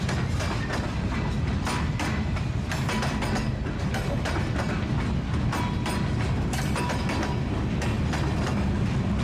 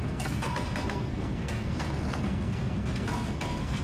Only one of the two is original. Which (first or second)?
first